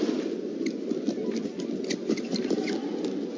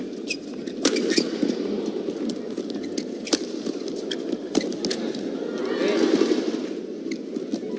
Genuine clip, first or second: second